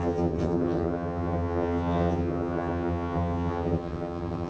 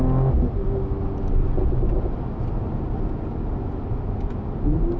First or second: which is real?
second